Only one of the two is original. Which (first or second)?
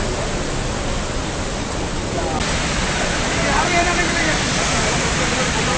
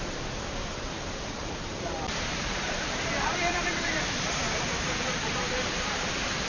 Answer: first